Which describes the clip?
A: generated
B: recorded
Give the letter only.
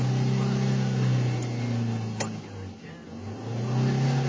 B